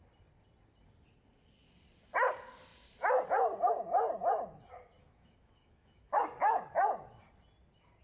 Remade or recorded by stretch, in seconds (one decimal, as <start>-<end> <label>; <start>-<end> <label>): 0.0-5.0 recorded; 5.0-6.2 remade; 6.2-8.0 recorded